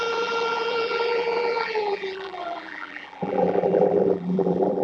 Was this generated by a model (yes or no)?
yes